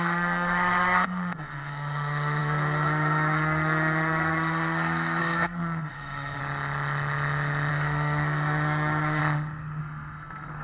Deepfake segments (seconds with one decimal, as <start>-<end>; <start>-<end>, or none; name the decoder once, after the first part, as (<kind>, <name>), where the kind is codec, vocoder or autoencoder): 0.0-6.4 (codec, SNAC); 7.7-9.2; 9.8-10.6